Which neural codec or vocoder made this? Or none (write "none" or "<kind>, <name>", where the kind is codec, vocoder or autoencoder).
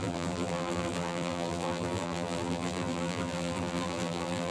vocoder, BigVGAN v2